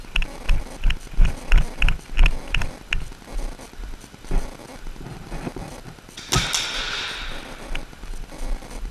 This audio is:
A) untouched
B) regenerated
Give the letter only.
A